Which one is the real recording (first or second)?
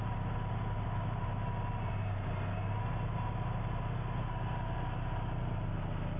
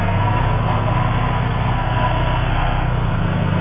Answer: first